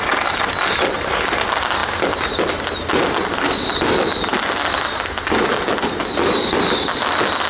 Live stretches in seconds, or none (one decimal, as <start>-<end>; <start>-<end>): 0.0-7.5